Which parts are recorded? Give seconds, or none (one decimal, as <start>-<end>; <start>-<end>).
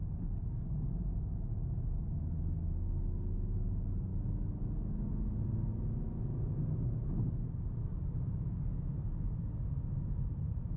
0.0-10.8